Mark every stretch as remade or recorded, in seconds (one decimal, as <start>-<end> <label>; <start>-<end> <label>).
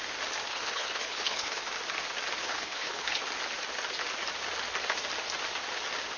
0.0-0.5 recorded; 0.5-1.6 remade; 1.6-2.4 recorded; 2.4-3.2 remade; 3.2-6.2 recorded